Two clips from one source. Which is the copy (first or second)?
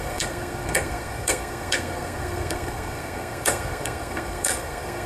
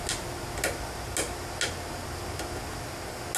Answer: first